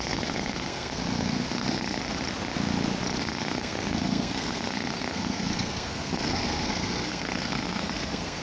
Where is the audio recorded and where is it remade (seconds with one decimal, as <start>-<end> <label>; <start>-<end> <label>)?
0.0-2.0 remade; 2.0-3.2 recorded; 3.2-8.4 remade